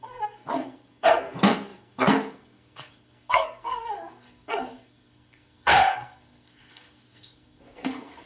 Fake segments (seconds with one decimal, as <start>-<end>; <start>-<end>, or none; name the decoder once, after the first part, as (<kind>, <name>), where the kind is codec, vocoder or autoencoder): 0.0-8.3 (codec, SNAC)